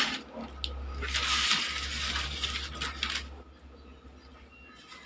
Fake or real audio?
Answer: real